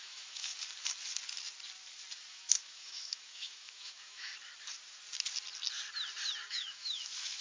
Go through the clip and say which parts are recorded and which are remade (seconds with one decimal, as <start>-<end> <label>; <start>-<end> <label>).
0.0-0.5 remade; 0.5-2.3 recorded; 2.3-4.3 remade; 4.3-6.5 recorded; 6.5-7.4 remade